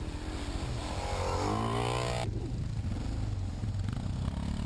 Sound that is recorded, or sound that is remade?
recorded